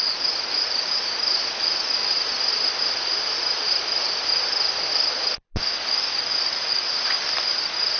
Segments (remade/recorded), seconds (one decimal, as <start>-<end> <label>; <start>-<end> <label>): 0.0-8.0 recorded